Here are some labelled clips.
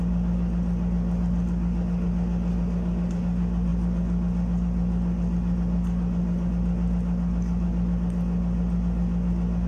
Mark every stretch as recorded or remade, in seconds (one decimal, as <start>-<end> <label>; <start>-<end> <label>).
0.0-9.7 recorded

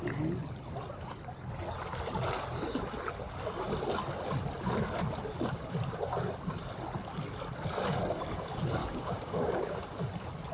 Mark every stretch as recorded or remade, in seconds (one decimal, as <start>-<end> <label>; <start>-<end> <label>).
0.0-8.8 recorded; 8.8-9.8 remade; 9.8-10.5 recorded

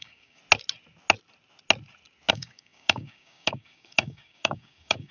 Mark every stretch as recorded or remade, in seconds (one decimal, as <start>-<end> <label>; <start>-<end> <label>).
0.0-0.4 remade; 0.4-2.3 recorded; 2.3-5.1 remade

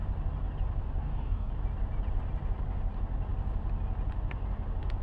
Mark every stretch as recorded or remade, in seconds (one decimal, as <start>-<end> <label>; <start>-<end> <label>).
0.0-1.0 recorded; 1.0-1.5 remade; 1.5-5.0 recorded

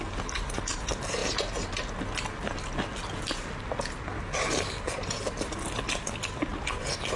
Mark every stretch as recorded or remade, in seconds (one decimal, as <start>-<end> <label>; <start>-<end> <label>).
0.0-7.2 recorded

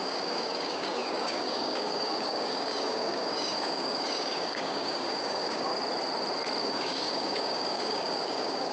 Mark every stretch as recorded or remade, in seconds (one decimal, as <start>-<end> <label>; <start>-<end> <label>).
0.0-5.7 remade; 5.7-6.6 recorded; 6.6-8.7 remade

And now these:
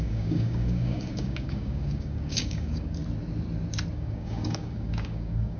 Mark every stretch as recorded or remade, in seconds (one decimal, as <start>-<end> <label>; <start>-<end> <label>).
0.0-3.0 remade; 3.0-3.9 recorded; 3.9-5.6 remade